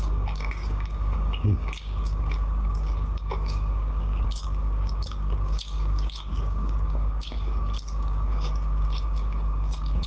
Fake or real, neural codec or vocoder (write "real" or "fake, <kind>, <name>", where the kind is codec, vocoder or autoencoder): fake, codec, DAC